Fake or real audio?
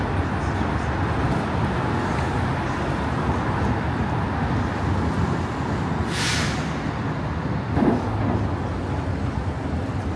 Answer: real